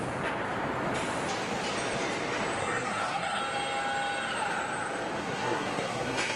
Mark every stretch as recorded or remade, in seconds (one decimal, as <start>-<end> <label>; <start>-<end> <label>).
0.0-2.6 recorded; 2.6-3.4 remade; 3.4-5.2 recorded; 5.2-6.4 remade